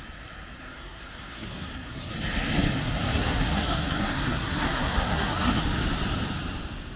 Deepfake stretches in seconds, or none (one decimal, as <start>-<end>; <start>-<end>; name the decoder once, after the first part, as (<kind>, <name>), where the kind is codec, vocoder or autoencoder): 0.6-2.1 (codec, SNAC); 2.8-5.6